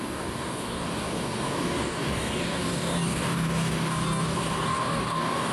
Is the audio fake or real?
fake